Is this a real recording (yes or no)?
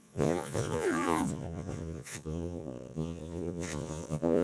no